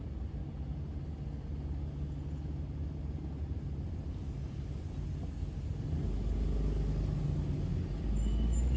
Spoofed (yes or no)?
no